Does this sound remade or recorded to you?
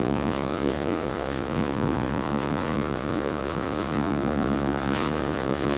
remade